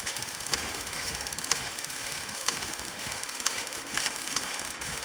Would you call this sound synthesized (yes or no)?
yes